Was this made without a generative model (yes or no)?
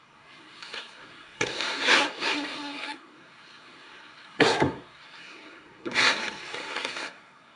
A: no